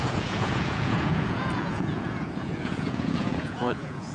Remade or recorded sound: remade